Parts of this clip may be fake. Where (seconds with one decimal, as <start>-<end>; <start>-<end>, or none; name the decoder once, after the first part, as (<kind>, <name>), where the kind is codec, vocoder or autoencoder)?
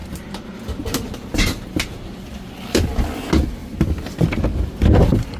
0.0-3.2 (vocoder, BigVGAN v2)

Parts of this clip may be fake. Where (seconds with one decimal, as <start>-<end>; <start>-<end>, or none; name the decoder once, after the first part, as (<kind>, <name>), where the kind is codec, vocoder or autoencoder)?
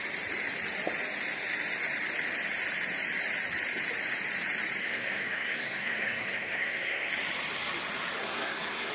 4.8-7.1 (codec, SNAC); 8.2-8.9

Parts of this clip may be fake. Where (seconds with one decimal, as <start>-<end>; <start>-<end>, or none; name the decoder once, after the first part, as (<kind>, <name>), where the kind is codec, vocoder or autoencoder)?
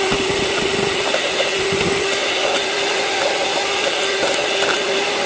none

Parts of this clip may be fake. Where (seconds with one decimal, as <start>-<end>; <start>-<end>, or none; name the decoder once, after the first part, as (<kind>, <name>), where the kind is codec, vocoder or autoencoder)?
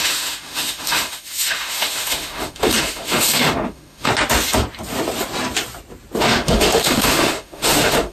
0.0-4.1 (autoencoder, DAC-VAE); 6.2-8.1